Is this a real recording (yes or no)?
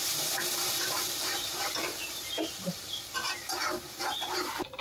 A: no